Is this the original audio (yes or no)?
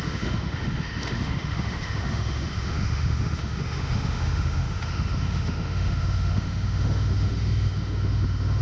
no